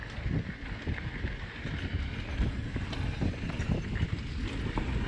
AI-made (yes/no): no